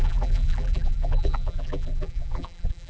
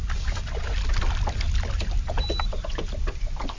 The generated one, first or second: first